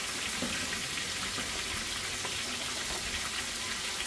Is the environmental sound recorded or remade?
recorded